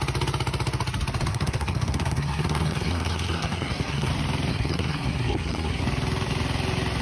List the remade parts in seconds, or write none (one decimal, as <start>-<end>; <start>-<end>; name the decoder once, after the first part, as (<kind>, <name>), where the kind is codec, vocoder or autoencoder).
1.3-4.1 (codec, SNAC); 4.5-5.8